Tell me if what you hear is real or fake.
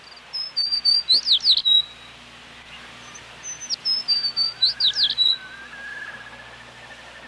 real